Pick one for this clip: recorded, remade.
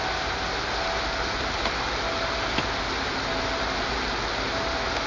recorded